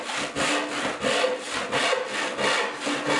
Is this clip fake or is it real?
real